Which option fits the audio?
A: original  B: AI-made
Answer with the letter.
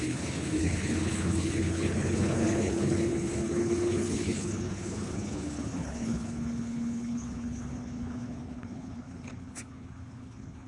B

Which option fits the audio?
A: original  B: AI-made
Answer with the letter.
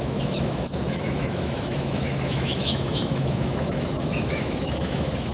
B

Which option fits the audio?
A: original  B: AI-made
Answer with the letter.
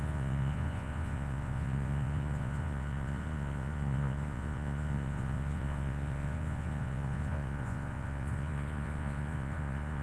B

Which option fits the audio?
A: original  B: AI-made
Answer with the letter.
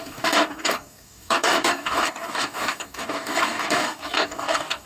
B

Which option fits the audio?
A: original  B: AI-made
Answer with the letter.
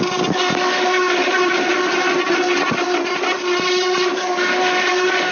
A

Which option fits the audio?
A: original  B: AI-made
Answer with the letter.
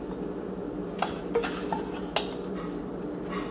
A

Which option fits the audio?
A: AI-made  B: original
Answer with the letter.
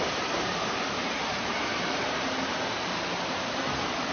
A